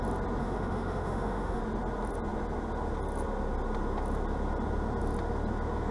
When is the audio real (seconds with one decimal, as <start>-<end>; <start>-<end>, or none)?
0.0-0.4; 1.6-5.9